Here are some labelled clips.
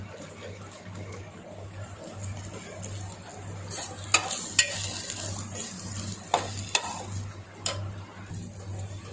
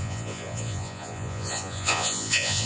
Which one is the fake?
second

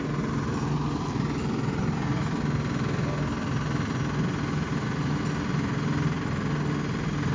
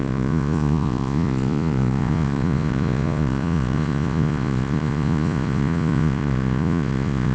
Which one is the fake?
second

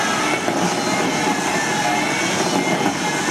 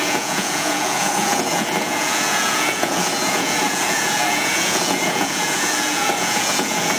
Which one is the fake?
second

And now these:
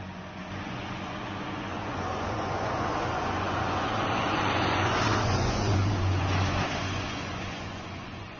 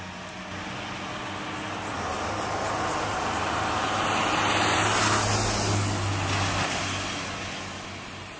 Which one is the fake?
first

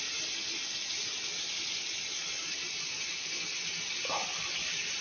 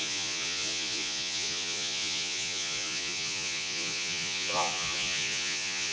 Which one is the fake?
second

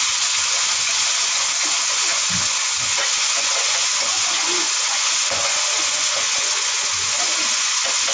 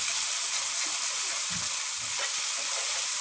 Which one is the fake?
first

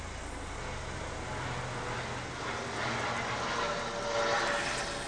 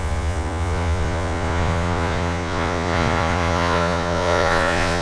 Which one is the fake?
second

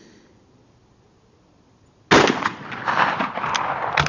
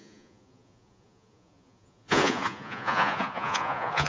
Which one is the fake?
second